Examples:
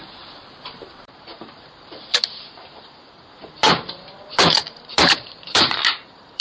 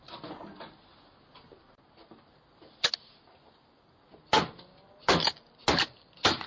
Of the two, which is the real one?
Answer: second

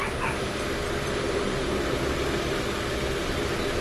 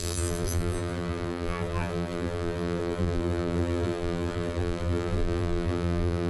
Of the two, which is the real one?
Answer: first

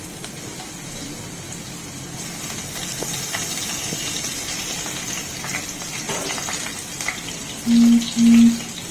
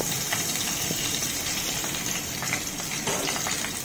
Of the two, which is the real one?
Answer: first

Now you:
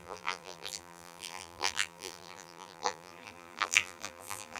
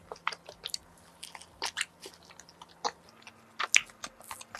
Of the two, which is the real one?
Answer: second